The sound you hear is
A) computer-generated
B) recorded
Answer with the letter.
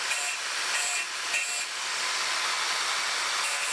B